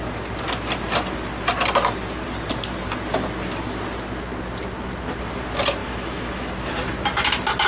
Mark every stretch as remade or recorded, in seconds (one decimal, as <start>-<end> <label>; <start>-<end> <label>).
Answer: 0.0-5.8 recorded; 5.8-6.5 remade; 6.5-7.7 recorded